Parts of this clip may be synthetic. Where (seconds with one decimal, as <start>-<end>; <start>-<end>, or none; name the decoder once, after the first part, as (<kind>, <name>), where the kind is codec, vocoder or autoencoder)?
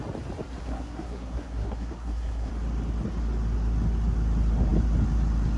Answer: 0.6-2.5 (codec, SNAC)